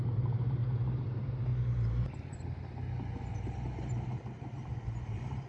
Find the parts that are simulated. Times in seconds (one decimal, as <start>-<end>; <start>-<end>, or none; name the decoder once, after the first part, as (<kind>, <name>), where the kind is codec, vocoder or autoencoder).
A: 0.0-0.6 (vocoder, BigVGAN v2); 1.1-1.5; 3.3-5.5